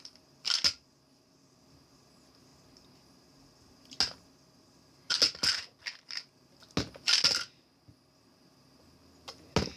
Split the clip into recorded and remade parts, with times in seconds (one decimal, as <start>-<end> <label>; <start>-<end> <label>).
0.0-9.8 recorded